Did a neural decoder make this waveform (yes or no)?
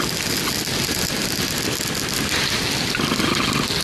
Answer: no